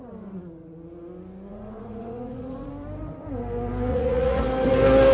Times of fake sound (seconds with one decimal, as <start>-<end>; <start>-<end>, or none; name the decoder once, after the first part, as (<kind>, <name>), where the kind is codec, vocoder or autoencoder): 1.5-2.7 (vocoder, Vocos); 3.9-4.4